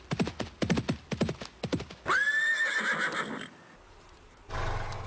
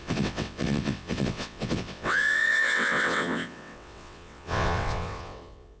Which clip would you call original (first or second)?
first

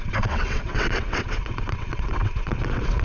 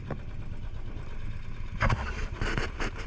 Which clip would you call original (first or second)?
second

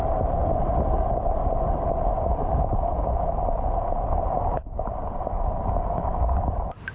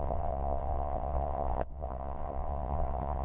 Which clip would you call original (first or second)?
first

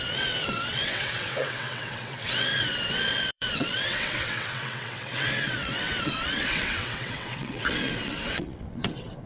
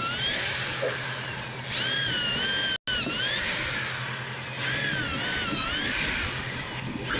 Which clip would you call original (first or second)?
second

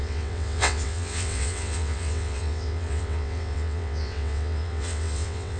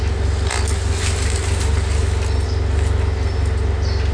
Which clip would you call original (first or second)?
second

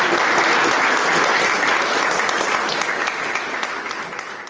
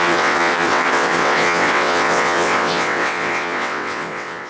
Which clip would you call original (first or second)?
first